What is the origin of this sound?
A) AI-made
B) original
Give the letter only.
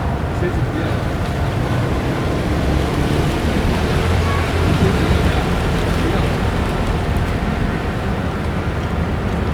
A